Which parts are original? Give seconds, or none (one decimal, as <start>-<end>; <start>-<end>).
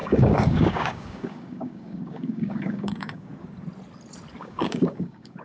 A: 3.3-4.4